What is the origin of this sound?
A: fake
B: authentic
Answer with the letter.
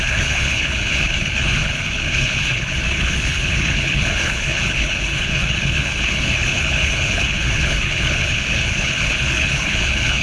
A